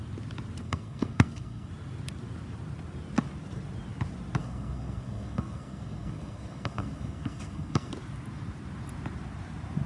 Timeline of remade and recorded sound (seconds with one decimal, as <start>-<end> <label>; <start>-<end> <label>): 0.0-0.6 recorded; 0.6-1.7 remade; 1.7-4.4 recorded; 4.4-7.9 remade; 7.9-9.9 recorded